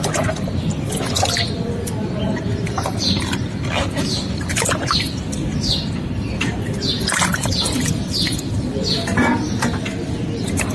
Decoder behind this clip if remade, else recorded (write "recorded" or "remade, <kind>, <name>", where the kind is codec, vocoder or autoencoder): recorded